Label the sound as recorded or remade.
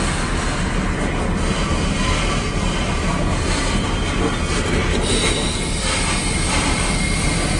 recorded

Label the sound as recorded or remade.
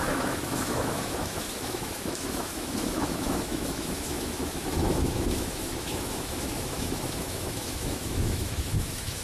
remade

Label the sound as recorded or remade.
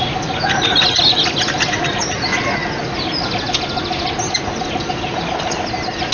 recorded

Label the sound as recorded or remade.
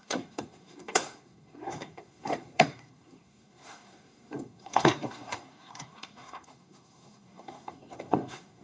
remade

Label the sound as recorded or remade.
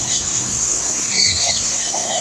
remade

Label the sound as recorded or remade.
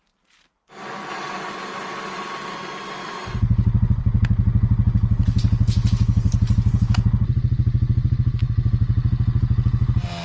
recorded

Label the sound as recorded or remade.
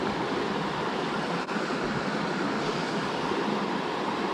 recorded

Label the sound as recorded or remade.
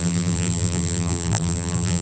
remade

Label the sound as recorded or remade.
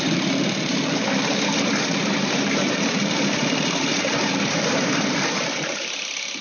remade